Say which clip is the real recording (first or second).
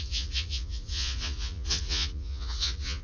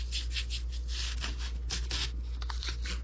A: second